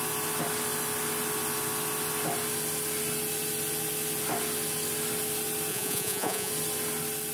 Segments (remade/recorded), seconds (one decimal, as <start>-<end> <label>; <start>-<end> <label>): 0.0-5.7 recorded; 5.7-6.5 remade; 6.5-7.3 recorded